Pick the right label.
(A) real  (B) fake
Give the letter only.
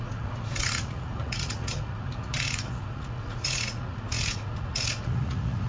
B